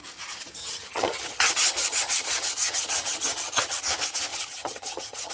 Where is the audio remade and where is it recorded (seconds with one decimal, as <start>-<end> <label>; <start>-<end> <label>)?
0.0-0.6 recorded; 0.6-3.8 remade; 3.8-4.3 recorded; 4.3-5.3 remade